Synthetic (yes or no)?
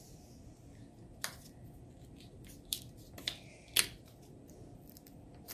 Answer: no